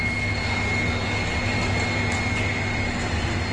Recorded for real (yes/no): yes